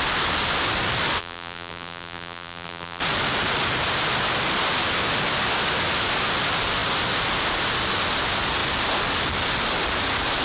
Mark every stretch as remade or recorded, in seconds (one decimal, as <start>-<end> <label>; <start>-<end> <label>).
0.0-1.2 recorded; 1.2-3.0 remade; 3.0-10.4 recorded